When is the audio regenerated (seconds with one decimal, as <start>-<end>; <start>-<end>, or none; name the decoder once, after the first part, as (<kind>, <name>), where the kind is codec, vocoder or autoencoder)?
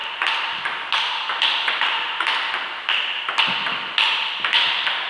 none